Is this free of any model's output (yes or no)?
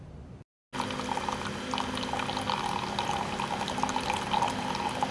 yes